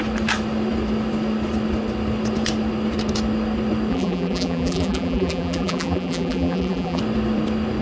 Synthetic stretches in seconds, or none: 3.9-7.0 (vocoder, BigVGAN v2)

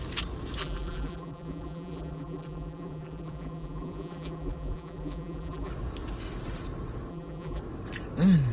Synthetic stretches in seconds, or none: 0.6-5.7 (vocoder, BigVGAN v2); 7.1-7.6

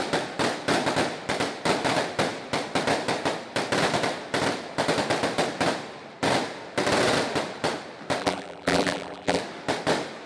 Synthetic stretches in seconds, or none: 8.2-9.4 (vocoder, BigVGAN v2)